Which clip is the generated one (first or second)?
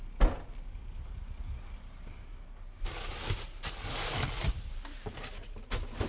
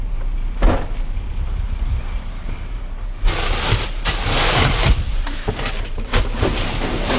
second